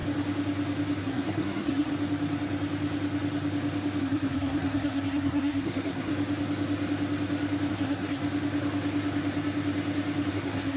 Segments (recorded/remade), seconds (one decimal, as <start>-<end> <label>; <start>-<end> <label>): 0.0-1.0 recorded; 1.0-1.9 remade; 1.9-4.0 recorded; 4.0-6.1 remade; 6.1-7.7 recorded; 7.7-8.2 remade; 8.2-10.3 recorded; 10.3-10.8 remade